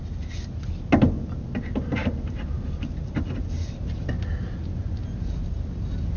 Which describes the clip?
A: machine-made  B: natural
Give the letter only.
B